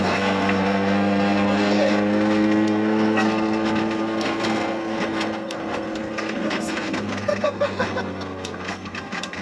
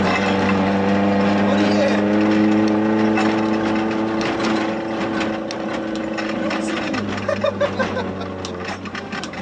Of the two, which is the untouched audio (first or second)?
second